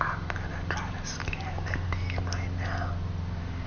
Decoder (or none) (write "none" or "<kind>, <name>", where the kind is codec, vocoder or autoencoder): none